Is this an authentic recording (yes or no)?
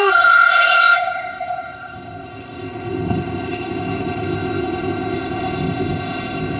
no